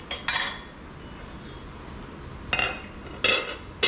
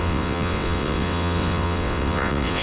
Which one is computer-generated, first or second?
second